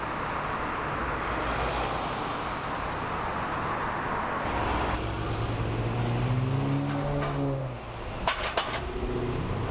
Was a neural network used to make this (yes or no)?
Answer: no